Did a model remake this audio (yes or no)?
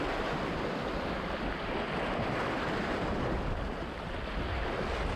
no